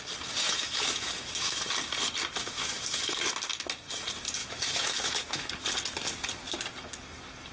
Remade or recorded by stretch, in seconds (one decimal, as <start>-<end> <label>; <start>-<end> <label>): 0.0-0.4 recorded; 0.4-1.6 remade; 1.6-2.4 recorded; 2.4-3.3 remade; 3.3-4.4 recorded; 4.4-5.5 remade; 5.5-7.5 recorded